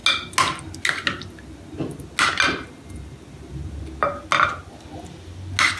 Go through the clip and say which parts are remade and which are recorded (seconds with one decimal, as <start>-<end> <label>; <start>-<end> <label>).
0.0-5.8 recorded